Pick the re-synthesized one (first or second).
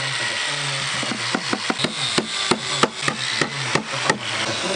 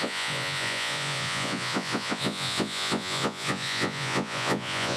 second